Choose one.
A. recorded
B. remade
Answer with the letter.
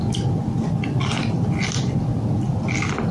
A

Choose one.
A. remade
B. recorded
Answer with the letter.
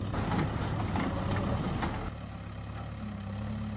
B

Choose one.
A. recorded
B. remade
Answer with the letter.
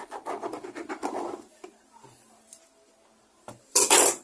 B